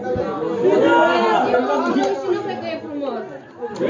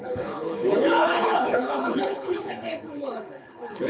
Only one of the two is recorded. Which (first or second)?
first